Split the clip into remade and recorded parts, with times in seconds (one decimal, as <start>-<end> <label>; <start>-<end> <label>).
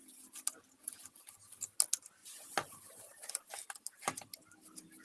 0.0-5.0 recorded